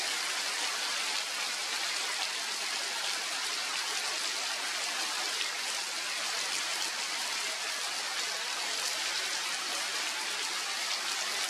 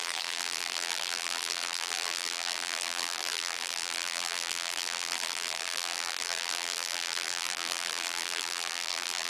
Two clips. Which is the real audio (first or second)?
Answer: first